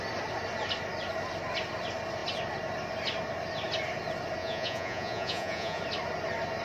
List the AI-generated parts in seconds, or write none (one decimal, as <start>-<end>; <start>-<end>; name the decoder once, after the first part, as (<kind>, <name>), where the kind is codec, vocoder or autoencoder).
4.4-5.8 (vocoder, Vocos)

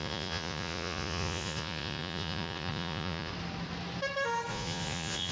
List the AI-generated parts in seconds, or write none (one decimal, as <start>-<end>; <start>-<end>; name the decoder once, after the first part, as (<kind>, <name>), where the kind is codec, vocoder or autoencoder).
0.0-3.3 (vocoder, Vocos); 4.5-5.3